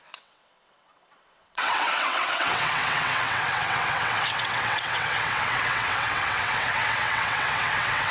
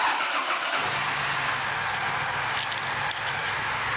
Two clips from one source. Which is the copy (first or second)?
first